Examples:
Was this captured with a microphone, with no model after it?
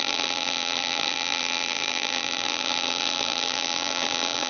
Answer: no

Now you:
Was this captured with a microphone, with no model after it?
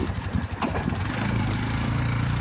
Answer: no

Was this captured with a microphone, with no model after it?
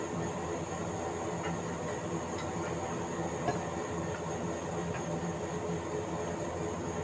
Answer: yes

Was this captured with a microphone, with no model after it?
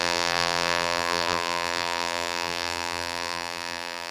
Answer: no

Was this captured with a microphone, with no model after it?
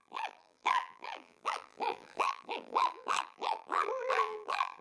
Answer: no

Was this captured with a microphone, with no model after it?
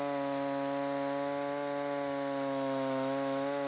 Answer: yes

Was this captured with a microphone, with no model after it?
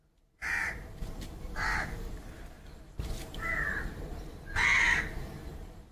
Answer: no